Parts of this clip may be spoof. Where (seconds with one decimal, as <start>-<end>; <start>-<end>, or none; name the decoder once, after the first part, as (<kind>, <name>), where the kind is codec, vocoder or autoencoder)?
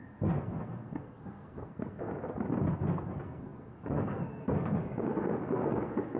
0.0-2.1 (codec, SNAC); 2.7-6.2